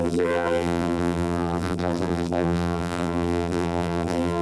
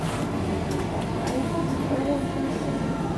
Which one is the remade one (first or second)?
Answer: first